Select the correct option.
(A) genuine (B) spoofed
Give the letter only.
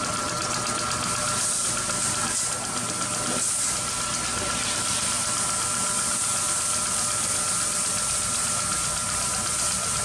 A